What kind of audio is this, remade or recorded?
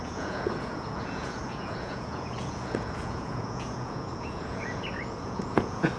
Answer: remade